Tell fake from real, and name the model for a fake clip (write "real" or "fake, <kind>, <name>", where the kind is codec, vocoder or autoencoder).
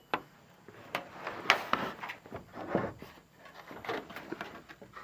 real